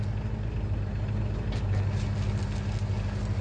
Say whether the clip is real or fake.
real